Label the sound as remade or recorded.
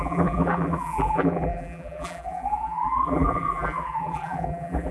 remade